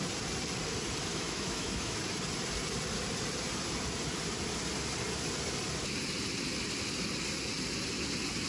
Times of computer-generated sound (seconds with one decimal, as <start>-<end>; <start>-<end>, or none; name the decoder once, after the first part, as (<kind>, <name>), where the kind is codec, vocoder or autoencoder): 1.1-2.0 (autoencoder, DAC-VAE)